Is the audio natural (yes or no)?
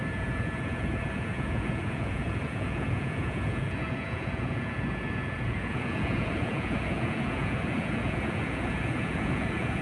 no